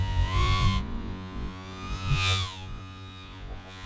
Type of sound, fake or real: fake